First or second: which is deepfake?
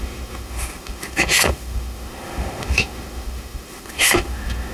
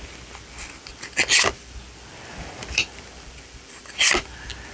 first